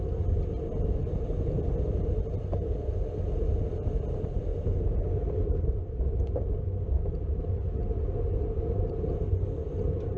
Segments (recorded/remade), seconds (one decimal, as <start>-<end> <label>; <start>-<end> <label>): 0.0-10.2 recorded